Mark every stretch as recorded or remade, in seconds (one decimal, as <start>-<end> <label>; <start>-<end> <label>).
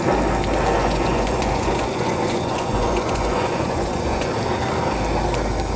0.0-0.8 recorded; 0.8-4.3 remade; 4.3-5.8 recorded